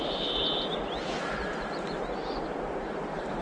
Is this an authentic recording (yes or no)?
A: yes